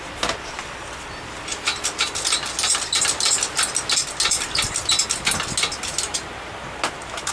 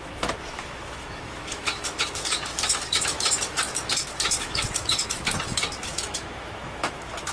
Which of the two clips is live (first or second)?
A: first